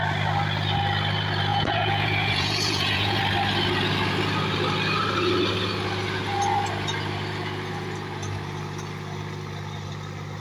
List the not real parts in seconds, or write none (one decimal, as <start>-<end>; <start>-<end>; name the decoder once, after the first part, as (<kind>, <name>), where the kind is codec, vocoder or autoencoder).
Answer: 1.5-3.2 (vocoder, Vocos)